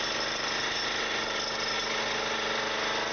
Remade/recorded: recorded